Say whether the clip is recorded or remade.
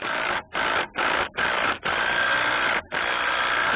recorded